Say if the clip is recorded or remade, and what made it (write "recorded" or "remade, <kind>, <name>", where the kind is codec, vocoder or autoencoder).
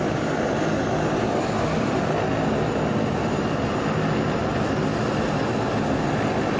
recorded